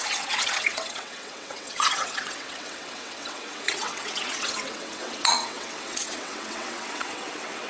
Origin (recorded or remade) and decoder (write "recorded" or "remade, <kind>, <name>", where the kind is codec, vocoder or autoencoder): remade, vocoder, WaveNeXt